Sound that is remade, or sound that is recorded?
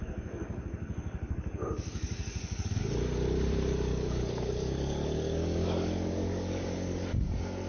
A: remade